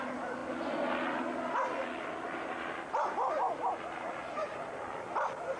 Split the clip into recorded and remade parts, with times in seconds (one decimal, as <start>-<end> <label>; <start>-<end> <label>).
0.0-5.6 recorded